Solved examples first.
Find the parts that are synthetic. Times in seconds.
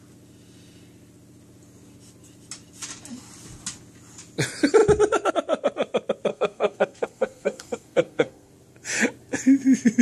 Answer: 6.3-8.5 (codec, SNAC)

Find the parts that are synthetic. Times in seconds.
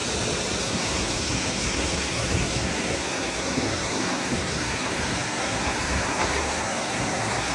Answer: 0.6-7.5 (codec, SNAC)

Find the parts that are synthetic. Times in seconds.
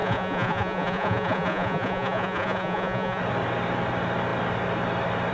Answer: 0.0-3.2 (vocoder, Vocos)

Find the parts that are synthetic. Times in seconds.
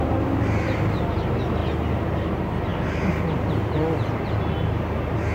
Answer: none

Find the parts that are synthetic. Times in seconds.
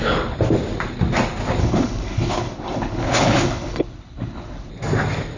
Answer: 1.6-4.7 (codec, HILCodec)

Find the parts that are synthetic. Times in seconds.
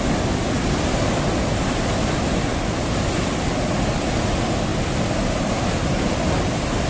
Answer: none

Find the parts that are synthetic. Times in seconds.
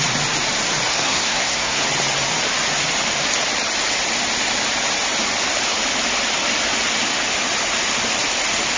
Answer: 0.9-1.8 (codec, SNAC)